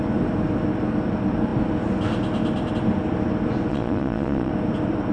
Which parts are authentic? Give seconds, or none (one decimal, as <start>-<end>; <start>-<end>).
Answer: 0.0-3.7; 4.5-5.1